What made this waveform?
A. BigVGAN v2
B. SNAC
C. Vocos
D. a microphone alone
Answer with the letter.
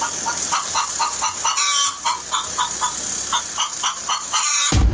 D